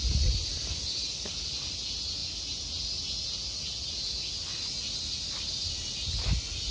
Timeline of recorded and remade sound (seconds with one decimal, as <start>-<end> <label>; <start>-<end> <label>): 0.0-6.7 recorded